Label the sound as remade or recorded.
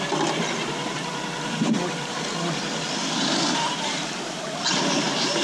recorded